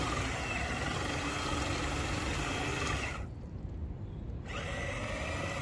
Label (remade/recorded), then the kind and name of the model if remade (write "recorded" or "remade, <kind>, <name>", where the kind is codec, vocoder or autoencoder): recorded